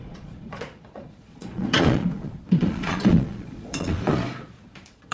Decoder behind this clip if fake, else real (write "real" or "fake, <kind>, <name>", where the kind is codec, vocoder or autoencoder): fake, vocoder, Vocos